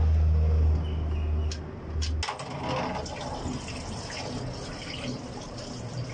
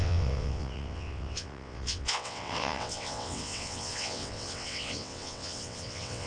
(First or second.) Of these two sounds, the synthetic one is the second